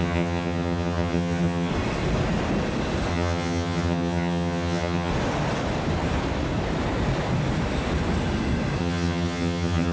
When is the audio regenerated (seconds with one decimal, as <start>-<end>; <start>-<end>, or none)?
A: 0.0-1.7; 3.1-5.1; 8.8-9.9